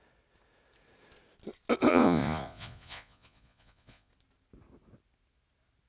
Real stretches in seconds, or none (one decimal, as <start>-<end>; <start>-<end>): 0.0-1.9; 4.1-5.9